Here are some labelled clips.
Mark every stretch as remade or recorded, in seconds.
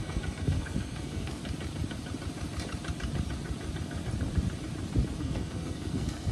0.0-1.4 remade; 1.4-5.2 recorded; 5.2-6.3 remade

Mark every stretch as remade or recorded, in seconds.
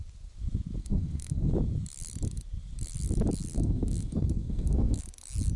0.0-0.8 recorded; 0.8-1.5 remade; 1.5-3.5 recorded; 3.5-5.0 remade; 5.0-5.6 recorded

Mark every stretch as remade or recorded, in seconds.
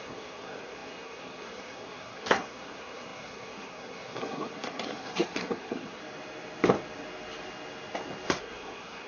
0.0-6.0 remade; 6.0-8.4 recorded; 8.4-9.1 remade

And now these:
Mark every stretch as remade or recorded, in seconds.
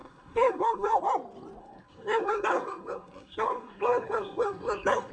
0.0-1.0 remade; 1.0-1.6 recorded; 1.6-5.1 remade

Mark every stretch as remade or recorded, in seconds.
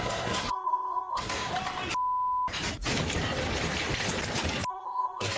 0.0-1.5 remade; 1.5-4.7 recorded; 4.7-5.4 remade